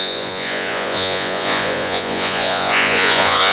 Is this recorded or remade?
remade